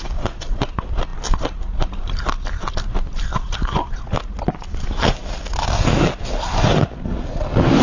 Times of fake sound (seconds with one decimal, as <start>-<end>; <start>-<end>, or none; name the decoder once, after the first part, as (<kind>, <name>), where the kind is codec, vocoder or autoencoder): none